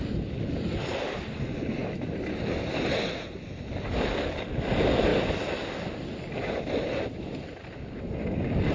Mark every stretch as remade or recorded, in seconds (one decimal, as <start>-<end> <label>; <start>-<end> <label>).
0.0-8.7 recorded